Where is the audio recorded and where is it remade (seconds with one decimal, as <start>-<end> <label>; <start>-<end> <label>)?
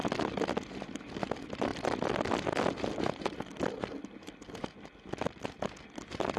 0.0-6.4 recorded